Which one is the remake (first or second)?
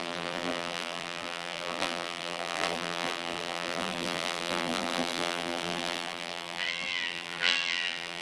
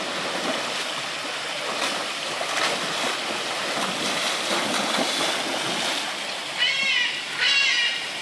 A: first